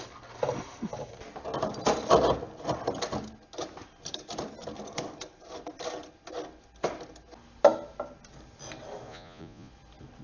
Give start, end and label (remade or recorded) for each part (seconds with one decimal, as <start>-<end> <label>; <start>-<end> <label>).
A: 0.0-9.1 recorded; 9.1-9.7 remade; 9.7-10.2 recorded